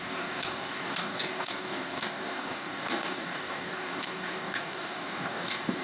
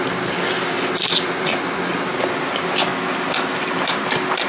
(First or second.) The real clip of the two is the second